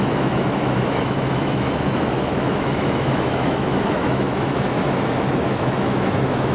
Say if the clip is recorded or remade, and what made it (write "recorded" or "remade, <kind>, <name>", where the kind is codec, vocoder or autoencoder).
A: remade, autoencoder, DAC-VAE